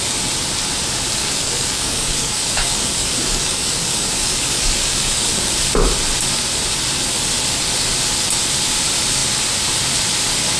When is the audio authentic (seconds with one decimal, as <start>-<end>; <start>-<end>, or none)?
0.0-1.2; 5.5-10.6